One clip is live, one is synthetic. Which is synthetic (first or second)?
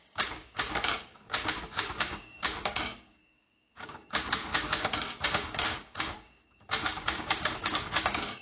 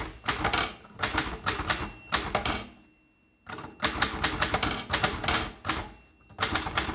first